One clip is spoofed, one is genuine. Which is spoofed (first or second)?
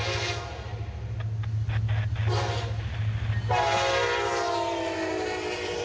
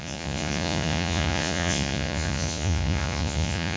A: second